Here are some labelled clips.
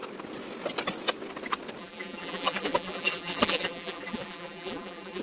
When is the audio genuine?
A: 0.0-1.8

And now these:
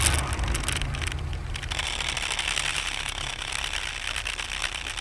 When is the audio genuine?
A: 0.0-2.7; 3.5-5.0

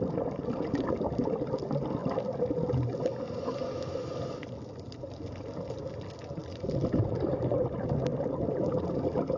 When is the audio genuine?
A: 2.0-4.2; 8.1-9.4

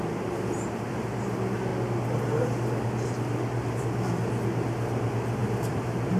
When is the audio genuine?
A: 0.0-5.4